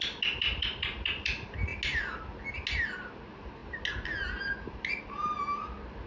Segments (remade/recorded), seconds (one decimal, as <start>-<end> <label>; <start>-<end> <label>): 0.0-6.1 recorded